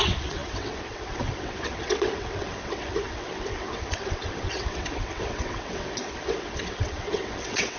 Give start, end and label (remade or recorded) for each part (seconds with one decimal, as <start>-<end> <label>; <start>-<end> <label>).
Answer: 0.0-7.8 remade